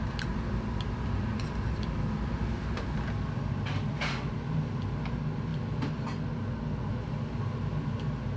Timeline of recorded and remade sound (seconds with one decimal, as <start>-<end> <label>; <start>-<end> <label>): 0.0-8.4 recorded